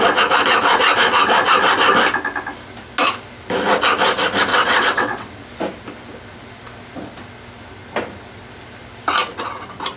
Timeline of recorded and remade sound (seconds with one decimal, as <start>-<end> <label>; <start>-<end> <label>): 0.0-4.5 recorded; 4.5-5.3 remade; 5.3-10.0 recorded